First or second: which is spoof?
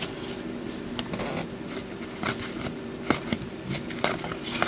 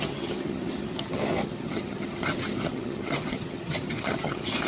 second